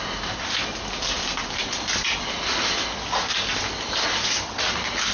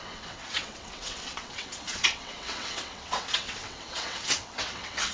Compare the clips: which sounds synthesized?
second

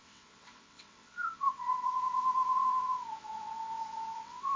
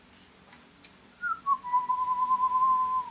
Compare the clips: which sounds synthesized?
first